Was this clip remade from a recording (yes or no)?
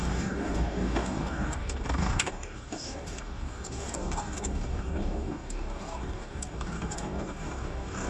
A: yes